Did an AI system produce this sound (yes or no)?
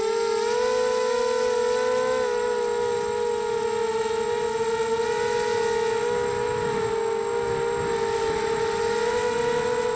no